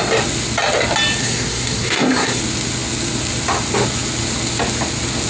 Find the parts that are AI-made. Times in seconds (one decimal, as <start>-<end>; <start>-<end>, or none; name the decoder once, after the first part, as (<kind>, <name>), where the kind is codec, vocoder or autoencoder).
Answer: 1.2-2.4 (codec, SNAC)